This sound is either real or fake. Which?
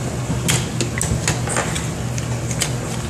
real